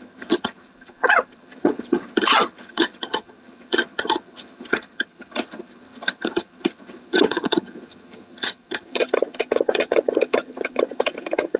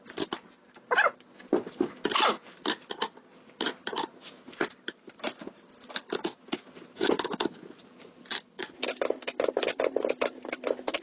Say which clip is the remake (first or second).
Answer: first